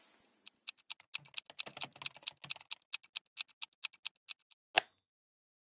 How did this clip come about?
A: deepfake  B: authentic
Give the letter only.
B